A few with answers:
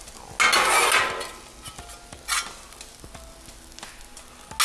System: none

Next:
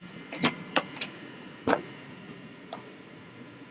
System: vocoder, Vocos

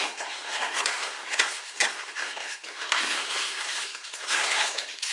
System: codec, SNAC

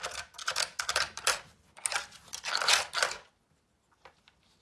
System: none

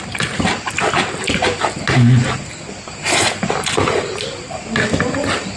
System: none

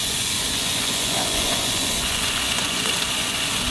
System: vocoder, Vocos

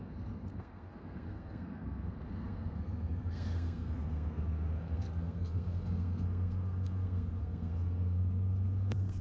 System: codec, SNAC